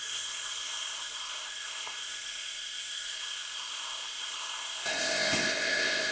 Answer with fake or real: fake